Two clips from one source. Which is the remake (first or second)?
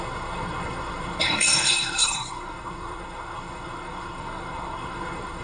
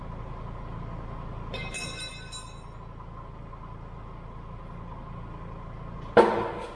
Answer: first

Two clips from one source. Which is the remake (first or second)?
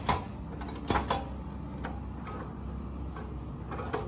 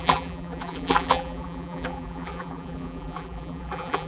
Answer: second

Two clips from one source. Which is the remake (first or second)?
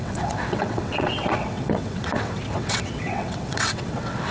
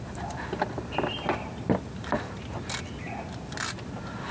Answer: first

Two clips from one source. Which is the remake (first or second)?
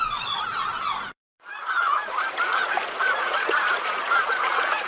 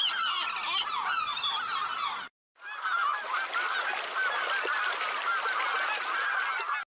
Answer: first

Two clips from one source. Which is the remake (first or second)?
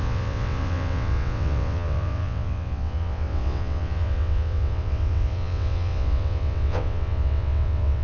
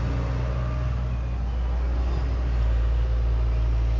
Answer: first